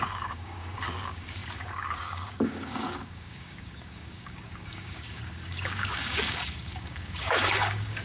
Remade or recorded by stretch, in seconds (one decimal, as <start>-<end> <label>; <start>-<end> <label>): 0.0-8.0 remade